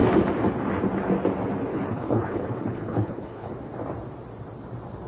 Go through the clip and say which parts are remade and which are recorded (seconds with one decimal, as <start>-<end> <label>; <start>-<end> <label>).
0.0-1.7 recorded; 1.7-3.5 remade; 3.5-5.1 recorded